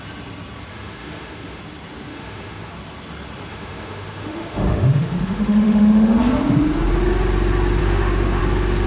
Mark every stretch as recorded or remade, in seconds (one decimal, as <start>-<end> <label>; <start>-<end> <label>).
0.0-0.7 recorded; 0.7-1.6 remade; 1.6-2.1 recorded; 2.1-2.7 remade; 2.7-3.5 recorded; 3.5-6.2 remade; 6.2-7.8 recorded; 7.8-8.4 remade; 8.4-8.9 recorded